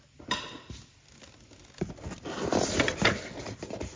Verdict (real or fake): real